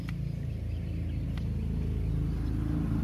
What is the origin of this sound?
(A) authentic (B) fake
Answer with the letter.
A